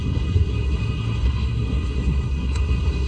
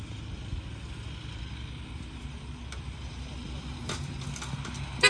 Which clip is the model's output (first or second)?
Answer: first